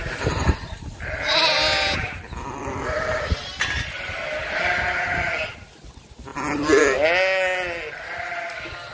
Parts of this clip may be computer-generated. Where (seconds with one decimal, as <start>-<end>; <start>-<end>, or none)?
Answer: 0.0-1.5